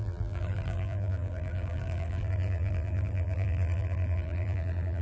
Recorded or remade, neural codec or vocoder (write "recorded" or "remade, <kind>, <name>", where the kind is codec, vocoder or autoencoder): remade, vocoder, BigVGAN v2